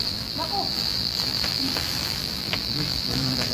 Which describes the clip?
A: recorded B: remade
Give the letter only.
B